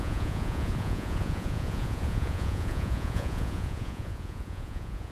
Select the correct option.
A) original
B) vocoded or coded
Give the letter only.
B